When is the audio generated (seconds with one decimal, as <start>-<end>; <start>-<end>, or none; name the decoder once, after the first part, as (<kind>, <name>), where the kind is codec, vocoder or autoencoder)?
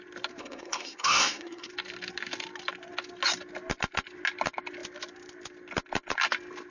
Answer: 0.4-1.7 (codec, SNAC)